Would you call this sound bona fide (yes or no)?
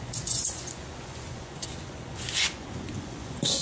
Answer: no